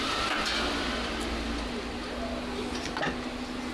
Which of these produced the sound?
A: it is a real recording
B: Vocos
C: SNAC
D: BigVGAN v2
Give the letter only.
A